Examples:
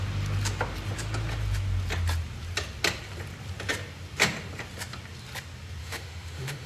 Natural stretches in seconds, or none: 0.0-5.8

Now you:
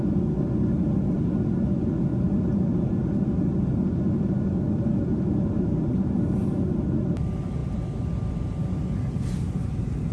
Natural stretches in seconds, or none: 0.0-10.1

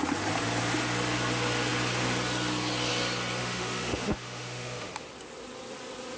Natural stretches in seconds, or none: 0.0-3.4; 4.9-6.2

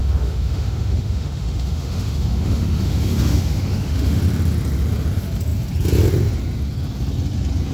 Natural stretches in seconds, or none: 4.2-7.7

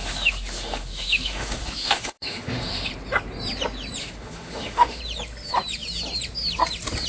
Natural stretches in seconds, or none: 2.9-4.0; 5.0-7.1